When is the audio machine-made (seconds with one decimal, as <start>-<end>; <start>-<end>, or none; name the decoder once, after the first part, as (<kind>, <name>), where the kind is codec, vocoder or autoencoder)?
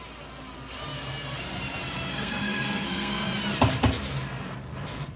2.1-3.2 (codec, SNAC)